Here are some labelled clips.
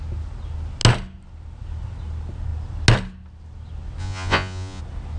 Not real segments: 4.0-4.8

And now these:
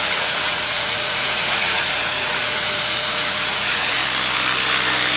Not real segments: 0.0-4.0

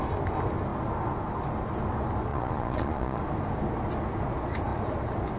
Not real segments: 2.3-3.2

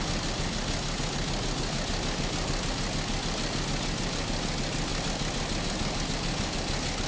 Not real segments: none

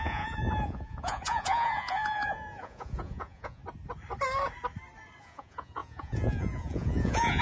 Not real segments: 0.0-3.6; 5.2-7.4